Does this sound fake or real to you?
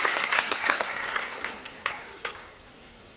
fake